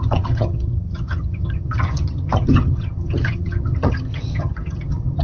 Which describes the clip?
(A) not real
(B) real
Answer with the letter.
A